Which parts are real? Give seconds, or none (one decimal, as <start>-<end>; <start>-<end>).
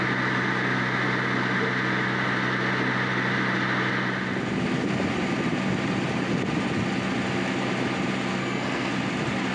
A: 0.0-8.4; 8.9-9.5